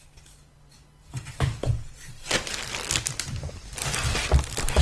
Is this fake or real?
real